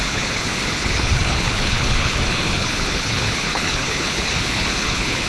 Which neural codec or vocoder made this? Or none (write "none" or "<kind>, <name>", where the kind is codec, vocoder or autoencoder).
codec, HILCodec